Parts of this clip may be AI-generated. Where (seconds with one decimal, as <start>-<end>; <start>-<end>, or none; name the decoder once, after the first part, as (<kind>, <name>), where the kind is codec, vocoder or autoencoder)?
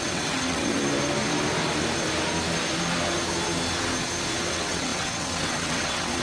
0.0-0.8 (vocoder, WaveNeXt); 4.5-6.2